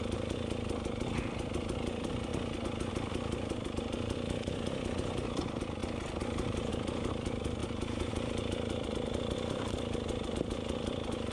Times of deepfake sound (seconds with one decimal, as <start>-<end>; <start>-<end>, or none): 0.0-2.3; 2.9-5.8; 6.7-11.3